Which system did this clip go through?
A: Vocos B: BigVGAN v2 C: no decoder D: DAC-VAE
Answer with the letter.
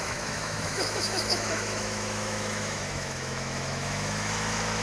D